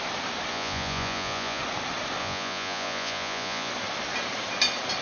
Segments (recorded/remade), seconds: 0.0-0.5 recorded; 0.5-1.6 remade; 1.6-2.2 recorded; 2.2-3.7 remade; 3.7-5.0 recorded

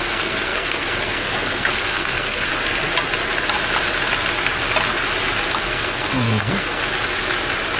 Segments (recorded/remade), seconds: 0.0-2.5 remade; 2.5-5.7 recorded; 5.7-6.8 remade; 6.8-7.8 recorded

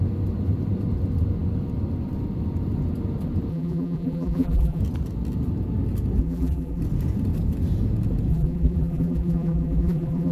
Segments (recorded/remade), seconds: 0.0-3.5 recorded; 3.5-4.8 remade; 4.8-6.2 recorded; 6.2-6.8 remade; 6.8-8.3 recorded; 8.3-10.3 remade

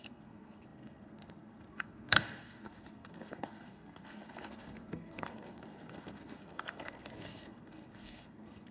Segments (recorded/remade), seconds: 0.0-8.7 remade

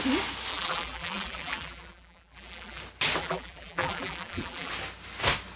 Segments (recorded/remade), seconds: 0.0-0.5 recorded; 0.5-2.8 remade; 2.8-3.2 recorded; 3.2-4.7 remade; 4.7-5.6 recorded

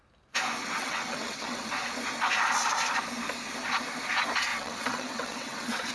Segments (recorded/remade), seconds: 0.0-0.6 recorded; 0.6-1.7 remade; 1.7-4.5 recorded; 4.5-5.9 remade

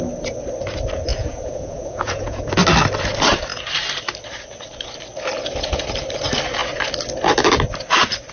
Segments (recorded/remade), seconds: 0.0-1.1 recorded; 1.1-2.5 remade; 2.5-8.3 recorded

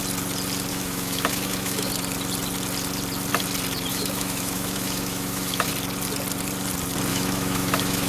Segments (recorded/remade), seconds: 0.0-0.7 recorded; 0.7-1.9 remade; 1.9-3.9 recorded; 3.9-5.7 remade; 5.7-7.1 recorded; 7.1-8.1 remade